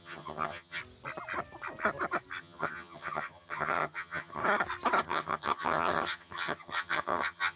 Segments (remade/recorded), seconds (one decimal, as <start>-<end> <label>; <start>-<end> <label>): 0.0-0.8 remade; 0.8-2.4 recorded; 2.4-4.4 remade; 4.4-5.0 recorded; 5.0-7.6 remade